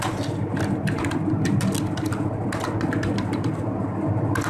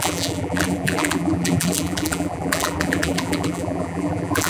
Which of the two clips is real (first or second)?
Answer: first